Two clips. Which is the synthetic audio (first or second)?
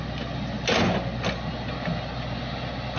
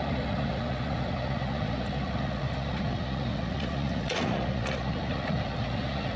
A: second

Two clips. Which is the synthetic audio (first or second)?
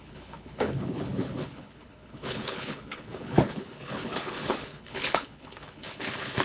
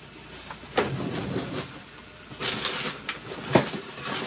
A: first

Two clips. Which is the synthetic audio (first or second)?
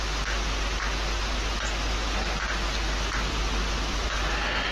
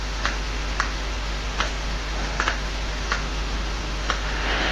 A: second